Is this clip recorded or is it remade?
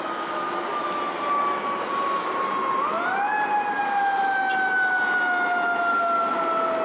recorded